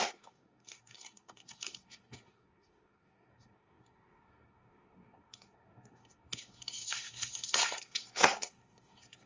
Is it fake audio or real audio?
fake